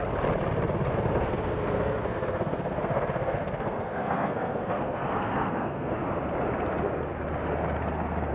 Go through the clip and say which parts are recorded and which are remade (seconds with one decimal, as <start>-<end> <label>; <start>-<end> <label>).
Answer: 0.0-0.9 recorded; 0.9-5.9 remade; 5.9-8.3 recorded